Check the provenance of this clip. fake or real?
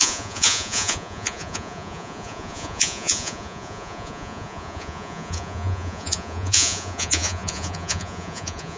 fake